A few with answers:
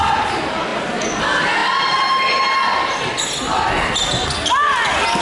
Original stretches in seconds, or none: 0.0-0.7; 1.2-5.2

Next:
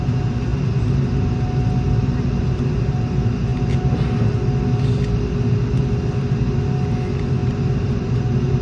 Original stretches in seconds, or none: 0.0-7.4; 8.2-8.6

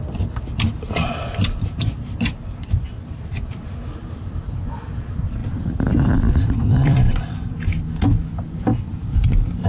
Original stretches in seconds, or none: none

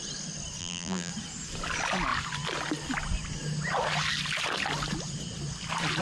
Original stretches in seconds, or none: 0.0-0.6; 1.1-6.0

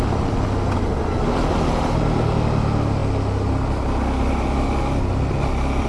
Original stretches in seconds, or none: 0.0-5.9

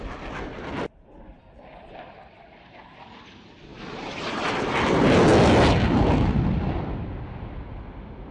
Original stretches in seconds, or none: 0.0-3.7; 4.6-8.3

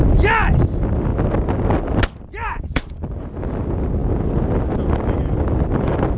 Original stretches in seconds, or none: 1.1-2.2; 4.0-4.6